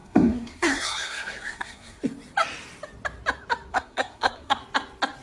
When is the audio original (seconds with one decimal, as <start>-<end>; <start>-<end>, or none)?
2.0-3.7; 4.6-5.2